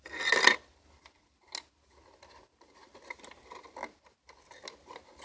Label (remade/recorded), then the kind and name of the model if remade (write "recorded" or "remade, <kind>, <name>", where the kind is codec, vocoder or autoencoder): recorded